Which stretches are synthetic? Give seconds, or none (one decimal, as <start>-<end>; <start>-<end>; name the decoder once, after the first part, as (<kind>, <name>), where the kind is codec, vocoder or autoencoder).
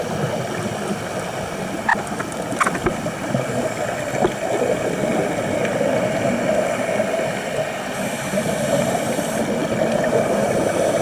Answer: none